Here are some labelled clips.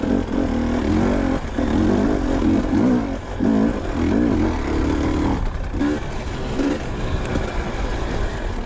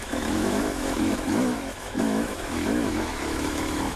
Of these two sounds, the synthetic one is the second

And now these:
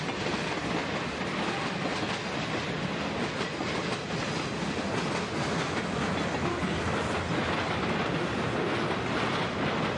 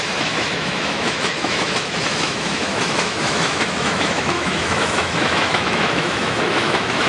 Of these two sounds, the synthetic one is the second